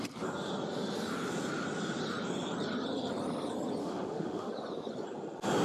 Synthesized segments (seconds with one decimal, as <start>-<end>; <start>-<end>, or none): 3.8-4.5